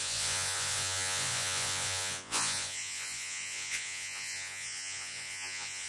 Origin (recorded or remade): remade